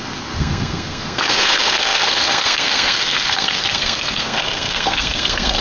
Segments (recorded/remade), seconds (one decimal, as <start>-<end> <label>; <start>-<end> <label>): 0.0-5.6 remade